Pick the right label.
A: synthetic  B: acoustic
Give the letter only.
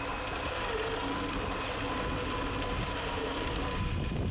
B